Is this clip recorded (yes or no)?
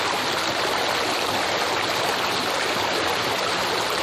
yes